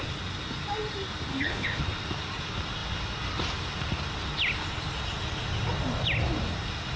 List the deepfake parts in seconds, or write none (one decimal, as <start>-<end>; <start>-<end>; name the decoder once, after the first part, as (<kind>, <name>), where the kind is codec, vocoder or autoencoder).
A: 1.3-1.8 (codec, HILCodec)

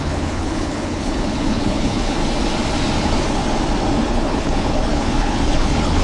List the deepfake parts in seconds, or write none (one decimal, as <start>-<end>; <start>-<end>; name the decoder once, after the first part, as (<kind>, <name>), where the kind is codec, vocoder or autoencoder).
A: 0.0-2.2 (codec, HILCodec); 3.0-3.4; 4.1-6.0